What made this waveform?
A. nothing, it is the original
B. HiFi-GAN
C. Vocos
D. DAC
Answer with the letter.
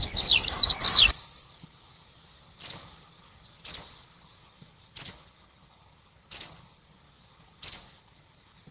A